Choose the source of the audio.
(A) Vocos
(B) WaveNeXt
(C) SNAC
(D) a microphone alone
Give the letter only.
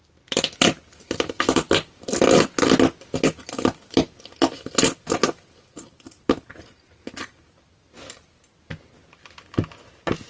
D